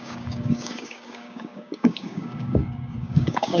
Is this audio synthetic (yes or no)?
yes